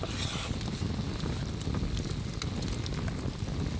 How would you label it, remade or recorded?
recorded